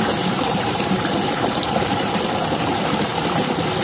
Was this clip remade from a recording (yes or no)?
yes